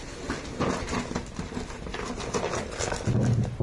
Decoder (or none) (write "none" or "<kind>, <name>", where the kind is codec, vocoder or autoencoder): none